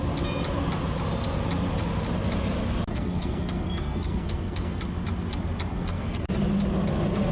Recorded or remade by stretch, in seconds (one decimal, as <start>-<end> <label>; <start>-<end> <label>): 0.0-2.9 recorded; 2.9-4.8 remade; 4.8-5.7 recorded; 5.7-6.3 remade; 6.3-7.3 recorded